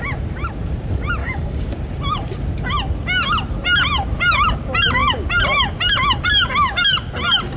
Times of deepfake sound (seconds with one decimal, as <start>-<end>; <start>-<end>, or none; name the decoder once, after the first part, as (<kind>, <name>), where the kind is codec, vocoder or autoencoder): 1.2-1.7 (codec, DAC)